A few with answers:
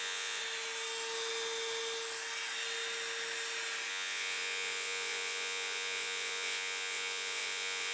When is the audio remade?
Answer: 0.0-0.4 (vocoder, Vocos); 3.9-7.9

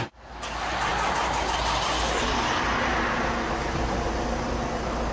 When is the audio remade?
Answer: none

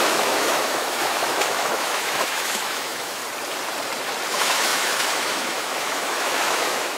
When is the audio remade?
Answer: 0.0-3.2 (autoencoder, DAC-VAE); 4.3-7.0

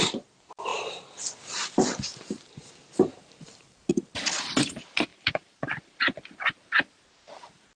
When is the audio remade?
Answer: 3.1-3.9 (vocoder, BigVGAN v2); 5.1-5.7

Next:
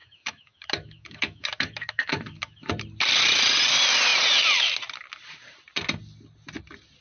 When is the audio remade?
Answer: 0.0-2.7 (autoencoder, DAC-VAE)